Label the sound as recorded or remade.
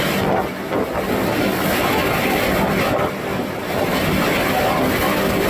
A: recorded